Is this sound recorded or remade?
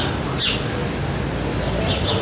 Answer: recorded